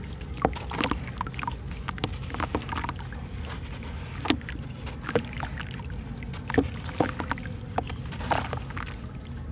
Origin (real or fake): real